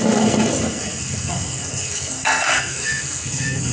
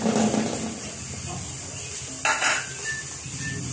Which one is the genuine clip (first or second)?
second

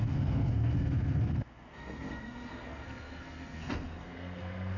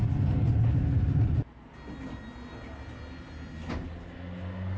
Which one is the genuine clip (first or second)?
second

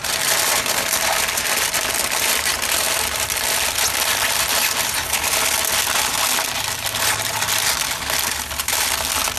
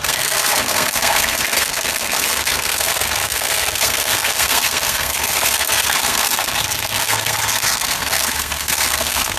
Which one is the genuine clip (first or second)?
first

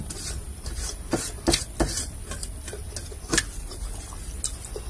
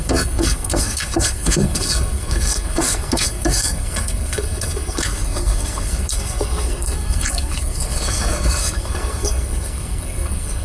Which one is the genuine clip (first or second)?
first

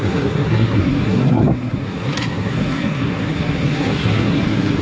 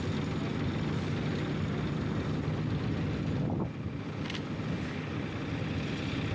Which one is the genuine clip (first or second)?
second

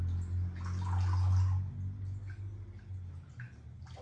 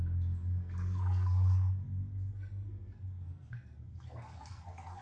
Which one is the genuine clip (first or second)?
first